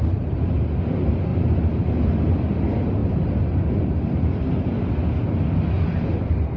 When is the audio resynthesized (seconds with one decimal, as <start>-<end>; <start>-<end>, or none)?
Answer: 0.0-1.3; 2.3-3.0; 5.5-6.6